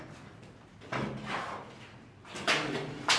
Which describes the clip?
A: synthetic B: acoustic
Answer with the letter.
B